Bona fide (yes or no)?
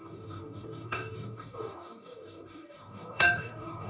no